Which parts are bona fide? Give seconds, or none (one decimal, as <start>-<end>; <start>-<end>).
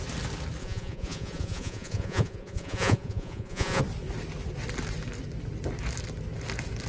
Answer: 0.0-0.6; 3.8-6.9